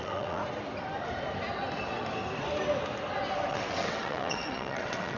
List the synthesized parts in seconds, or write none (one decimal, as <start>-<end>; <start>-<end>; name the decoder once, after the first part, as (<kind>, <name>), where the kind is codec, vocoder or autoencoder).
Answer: 0.0-0.4 (vocoder, WaveNeXt); 3.5-5.2